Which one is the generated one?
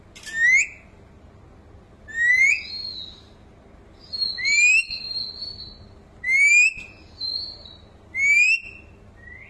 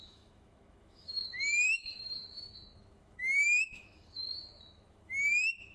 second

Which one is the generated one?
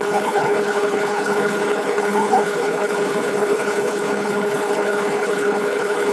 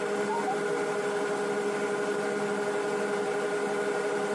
first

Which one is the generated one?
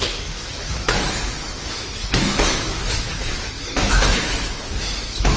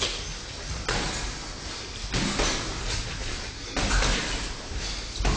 first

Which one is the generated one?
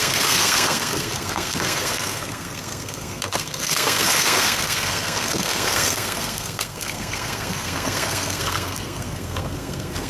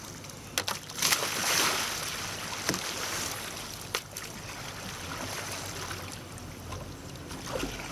first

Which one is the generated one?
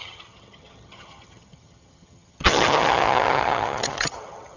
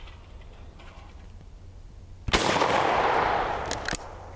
first